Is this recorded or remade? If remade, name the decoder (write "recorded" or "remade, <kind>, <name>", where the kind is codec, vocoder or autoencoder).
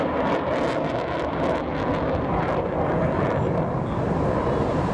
recorded